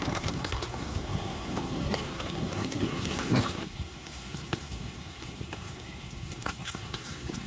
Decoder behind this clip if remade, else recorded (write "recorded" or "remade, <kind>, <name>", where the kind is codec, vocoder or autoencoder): remade, codec, SNAC